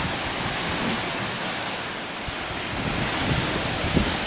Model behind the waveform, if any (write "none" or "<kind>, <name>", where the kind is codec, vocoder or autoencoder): none